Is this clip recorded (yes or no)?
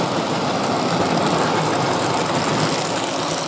yes